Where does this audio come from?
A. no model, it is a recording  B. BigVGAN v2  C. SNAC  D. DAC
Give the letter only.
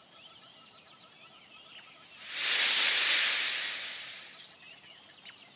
B